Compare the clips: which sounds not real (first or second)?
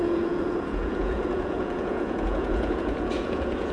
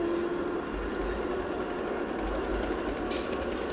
first